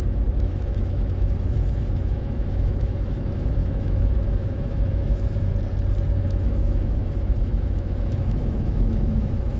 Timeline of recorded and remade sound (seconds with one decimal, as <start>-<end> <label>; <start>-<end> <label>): 0.0-5.5 remade; 5.5-6.2 recorded; 6.2-9.6 remade